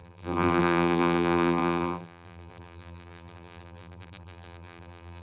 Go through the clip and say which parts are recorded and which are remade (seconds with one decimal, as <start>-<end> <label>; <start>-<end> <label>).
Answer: 0.0-5.2 remade